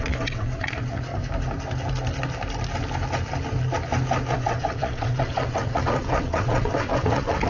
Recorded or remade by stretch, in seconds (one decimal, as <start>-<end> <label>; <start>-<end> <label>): 0.0-1.1 remade; 1.1-4.3 recorded; 4.3-7.5 remade